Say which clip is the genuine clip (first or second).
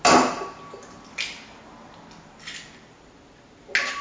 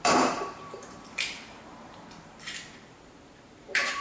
first